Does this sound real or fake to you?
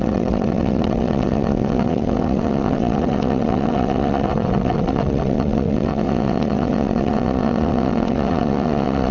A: fake